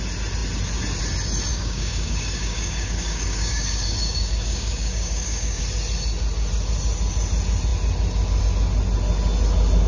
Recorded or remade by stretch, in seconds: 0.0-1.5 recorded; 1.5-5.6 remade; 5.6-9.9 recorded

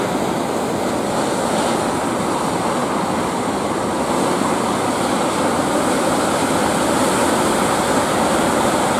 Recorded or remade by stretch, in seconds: 0.0-2.8 recorded; 2.8-7.0 remade; 7.0-9.0 recorded

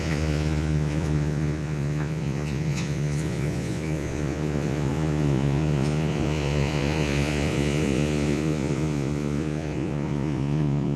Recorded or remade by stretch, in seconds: 0.0-11.0 remade

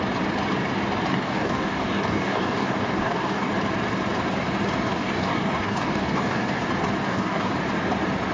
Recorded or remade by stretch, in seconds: 0.0-1.1 recorded; 1.1-3.5 remade; 3.5-4.9 recorded; 4.9-6.6 remade; 6.6-7.0 recorded; 7.0-7.5 remade; 7.5-8.3 recorded